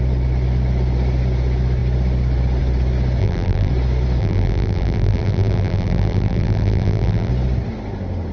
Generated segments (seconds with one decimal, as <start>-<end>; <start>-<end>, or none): 3.2-3.7; 4.2-7.3